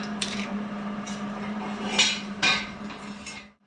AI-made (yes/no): yes